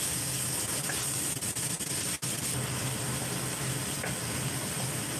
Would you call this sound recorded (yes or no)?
yes